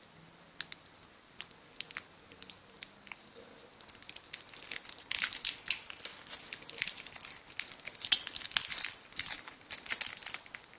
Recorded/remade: recorded